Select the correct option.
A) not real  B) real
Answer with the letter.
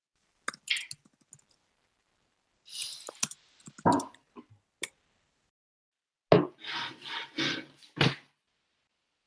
B